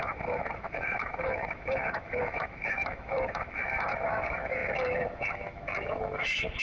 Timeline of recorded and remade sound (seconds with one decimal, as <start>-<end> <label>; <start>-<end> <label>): 0.0-6.6 remade